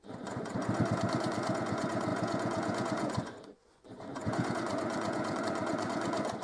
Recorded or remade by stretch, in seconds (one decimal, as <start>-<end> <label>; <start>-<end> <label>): 0.0-6.4 remade